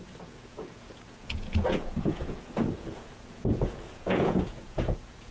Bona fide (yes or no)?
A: no